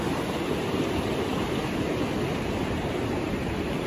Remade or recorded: recorded